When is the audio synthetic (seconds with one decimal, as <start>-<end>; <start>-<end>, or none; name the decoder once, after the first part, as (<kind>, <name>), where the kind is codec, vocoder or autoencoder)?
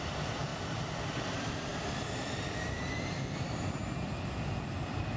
0.0-0.5 (vocoder, BigVGAN v2); 1.1-3.8; 4.7-5.2